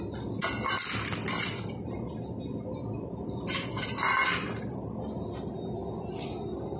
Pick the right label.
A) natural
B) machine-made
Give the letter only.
A